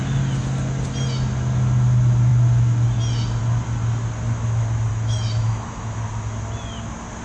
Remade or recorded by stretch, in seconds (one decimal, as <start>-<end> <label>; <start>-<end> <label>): 0.0-4.9 recorded; 4.9-6.0 remade; 6.0-7.2 recorded